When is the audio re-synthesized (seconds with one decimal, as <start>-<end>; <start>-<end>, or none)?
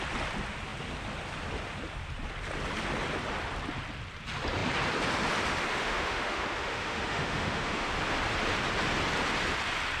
5.7-7.9